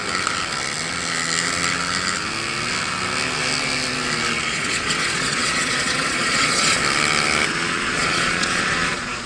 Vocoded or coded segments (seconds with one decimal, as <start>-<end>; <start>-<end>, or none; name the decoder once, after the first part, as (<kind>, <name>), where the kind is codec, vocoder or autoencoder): 4.5-6.8 (vocoder, Vocos); 7.5-9.3